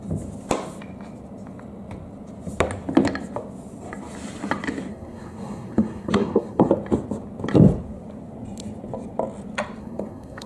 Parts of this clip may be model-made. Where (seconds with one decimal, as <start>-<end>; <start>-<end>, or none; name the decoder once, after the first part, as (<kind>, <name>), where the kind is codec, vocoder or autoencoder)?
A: 4.9-6.7 (codec, SNAC); 9.8-10.5